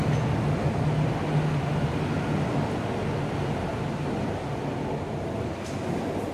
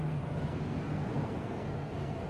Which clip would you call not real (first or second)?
second